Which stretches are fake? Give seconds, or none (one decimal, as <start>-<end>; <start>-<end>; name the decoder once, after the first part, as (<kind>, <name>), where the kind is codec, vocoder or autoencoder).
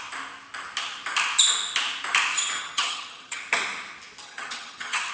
2.3-3.4 (vocoder, HiFi-GAN); 4.2-5.1